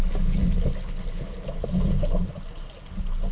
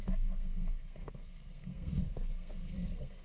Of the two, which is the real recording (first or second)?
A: first